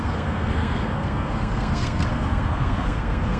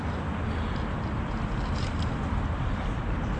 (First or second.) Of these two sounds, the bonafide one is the second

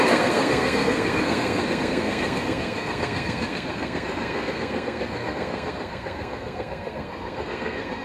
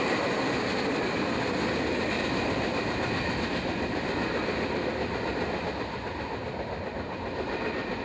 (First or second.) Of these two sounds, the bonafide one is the second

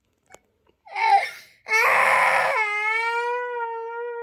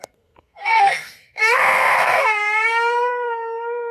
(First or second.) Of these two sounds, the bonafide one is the first